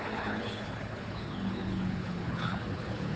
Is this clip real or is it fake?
fake